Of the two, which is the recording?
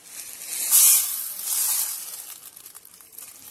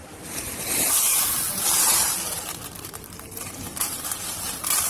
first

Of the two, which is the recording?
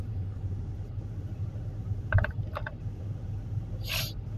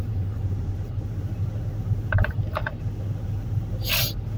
second